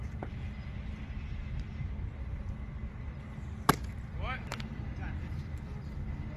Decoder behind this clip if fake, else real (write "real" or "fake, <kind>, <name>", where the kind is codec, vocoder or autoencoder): real